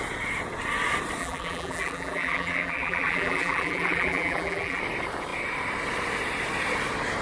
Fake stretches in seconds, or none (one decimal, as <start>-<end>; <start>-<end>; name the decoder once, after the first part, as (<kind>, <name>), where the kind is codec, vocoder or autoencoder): 1.2-4.8 (vocoder, BigVGAN v2)